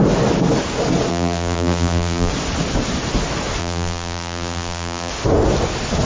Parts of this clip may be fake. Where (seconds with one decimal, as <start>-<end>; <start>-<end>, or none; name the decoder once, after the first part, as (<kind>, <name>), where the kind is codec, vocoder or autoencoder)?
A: 1.1-2.3 (vocoder, BigVGAN v2); 3.6-5.1